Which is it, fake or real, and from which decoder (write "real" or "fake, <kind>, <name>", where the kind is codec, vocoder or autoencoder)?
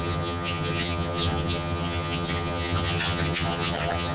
fake, vocoder, HiFi-GAN